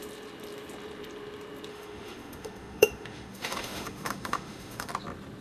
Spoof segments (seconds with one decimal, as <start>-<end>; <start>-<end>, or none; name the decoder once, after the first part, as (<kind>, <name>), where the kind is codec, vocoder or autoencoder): 1.7-4.9 (autoencoder, DAC-VAE)